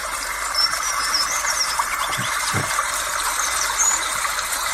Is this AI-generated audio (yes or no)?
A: yes